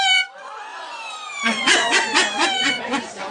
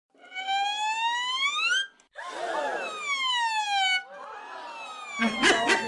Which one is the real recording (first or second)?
second